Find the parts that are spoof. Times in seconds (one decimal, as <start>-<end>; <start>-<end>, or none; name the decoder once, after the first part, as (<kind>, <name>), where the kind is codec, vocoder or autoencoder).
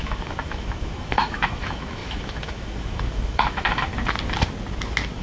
0.0-3.9 (autoencoder, DAC-VAE)